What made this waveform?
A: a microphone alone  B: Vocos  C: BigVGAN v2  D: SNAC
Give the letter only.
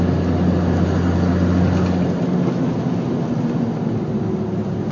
A